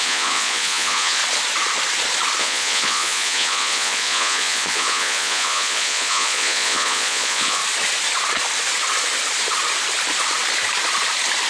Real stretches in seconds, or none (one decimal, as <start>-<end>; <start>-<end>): 1.2-2.4; 7.6-11.5